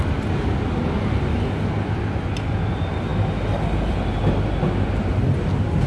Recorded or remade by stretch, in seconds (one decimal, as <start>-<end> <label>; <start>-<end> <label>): 0.0-5.9 recorded